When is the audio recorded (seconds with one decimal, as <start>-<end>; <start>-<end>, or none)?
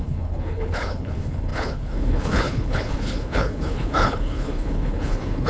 none